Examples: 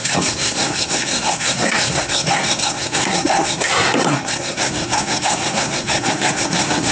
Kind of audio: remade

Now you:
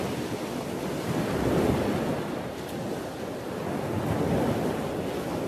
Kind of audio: recorded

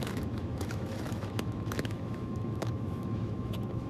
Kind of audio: remade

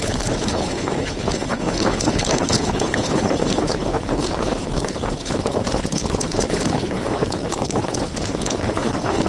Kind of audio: remade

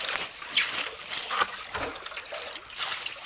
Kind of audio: recorded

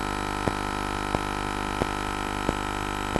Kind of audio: recorded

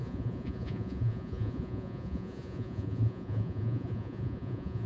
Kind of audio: remade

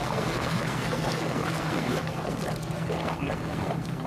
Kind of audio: remade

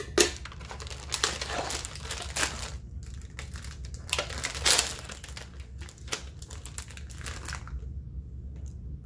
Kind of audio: recorded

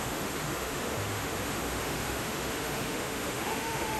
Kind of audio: remade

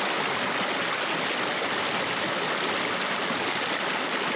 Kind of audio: recorded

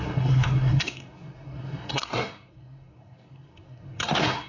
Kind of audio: remade